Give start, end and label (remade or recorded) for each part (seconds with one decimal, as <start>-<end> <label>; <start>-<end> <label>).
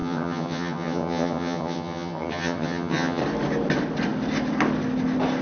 0.0-3.2 remade; 3.2-5.4 recorded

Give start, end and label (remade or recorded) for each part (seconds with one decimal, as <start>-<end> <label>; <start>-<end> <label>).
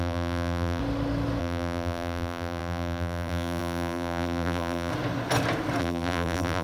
0.0-0.8 remade; 0.8-1.4 recorded; 1.4-4.9 remade; 4.9-5.8 recorded; 5.8-6.6 remade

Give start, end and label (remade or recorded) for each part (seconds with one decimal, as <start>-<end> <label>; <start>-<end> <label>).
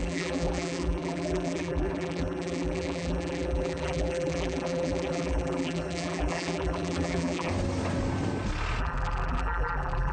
0.0-7.5 remade; 7.5-8.8 recorded; 8.8-10.1 remade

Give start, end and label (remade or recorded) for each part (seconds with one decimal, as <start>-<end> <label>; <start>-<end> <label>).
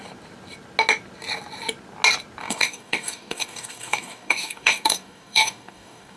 0.0-2.4 recorded; 2.4-6.2 remade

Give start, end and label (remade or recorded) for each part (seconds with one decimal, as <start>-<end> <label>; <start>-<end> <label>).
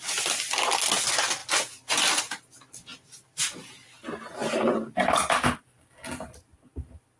0.0-7.2 recorded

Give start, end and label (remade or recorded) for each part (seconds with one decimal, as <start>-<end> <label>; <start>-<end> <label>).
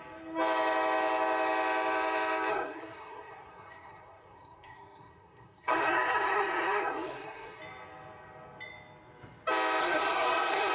0.0-2.5 recorded; 2.5-7.6 remade; 7.6-9.8 recorded; 9.8-10.7 remade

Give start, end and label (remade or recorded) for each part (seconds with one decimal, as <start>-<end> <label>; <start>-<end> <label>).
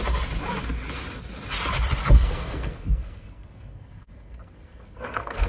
0.0-2.0 recorded; 2.0-5.5 remade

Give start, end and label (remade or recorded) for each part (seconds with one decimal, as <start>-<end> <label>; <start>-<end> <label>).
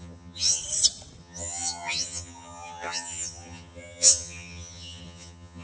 0.0-0.6 remade; 0.6-1.2 recorded; 1.2-5.6 remade